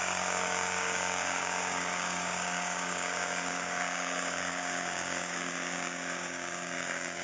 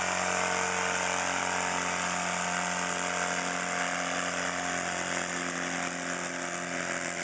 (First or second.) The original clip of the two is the second